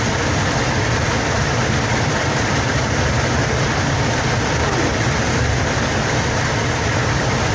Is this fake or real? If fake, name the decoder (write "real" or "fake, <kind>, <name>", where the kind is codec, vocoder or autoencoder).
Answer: fake, vocoder, BigVGAN v2